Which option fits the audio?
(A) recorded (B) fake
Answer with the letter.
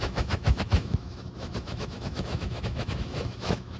B